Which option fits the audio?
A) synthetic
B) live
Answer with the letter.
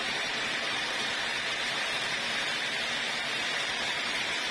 A